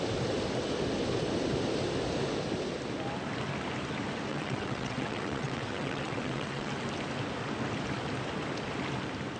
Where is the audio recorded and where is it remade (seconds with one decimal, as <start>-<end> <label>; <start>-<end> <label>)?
0.0-4.3 recorded; 4.3-6.7 remade; 6.7-9.4 recorded